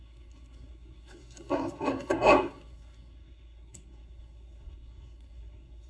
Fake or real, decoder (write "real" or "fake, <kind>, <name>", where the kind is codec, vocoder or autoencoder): fake, codec, SNAC